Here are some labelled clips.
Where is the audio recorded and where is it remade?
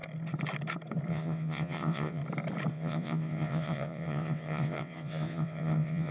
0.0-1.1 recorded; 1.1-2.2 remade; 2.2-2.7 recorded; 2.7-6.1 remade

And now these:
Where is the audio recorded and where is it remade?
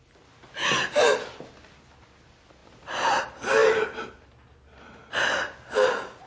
0.0-6.3 recorded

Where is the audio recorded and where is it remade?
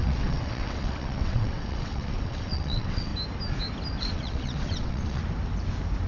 0.0-3.1 remade; 3.1-4.0 recorded; 4.0-5.2 remade; 5.2-6.1 recorded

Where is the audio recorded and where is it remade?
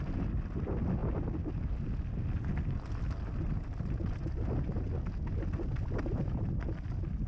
0.0-7.3 recorded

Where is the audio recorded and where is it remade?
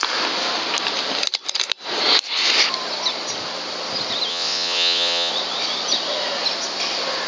0.0-4.3 recorded; 4.3-5.3 remade; 5.3-7.3 recorded